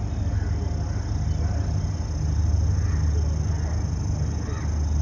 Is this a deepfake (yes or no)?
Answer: no